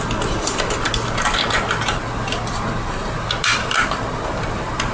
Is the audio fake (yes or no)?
no